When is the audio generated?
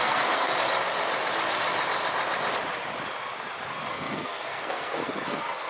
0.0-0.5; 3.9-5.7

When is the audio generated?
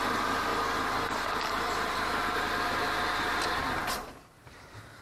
none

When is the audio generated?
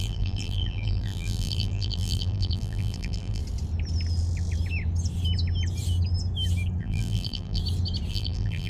0.0-3.4; 6.8-7.6; 8.1-8.7